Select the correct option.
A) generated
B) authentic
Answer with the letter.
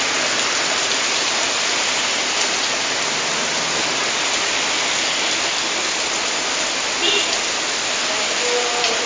B